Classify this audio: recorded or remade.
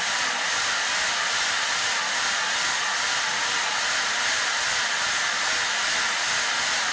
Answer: recorded